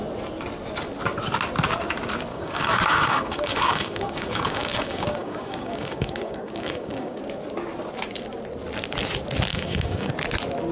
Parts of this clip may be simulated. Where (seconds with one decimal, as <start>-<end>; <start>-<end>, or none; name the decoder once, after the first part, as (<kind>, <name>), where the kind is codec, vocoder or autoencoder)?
2.3-7.2 (codec, DAC); 9.5-10.1